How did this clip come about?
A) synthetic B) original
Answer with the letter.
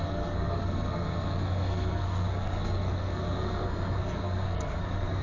A